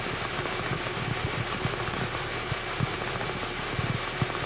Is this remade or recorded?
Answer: recorded